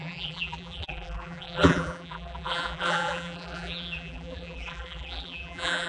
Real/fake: fake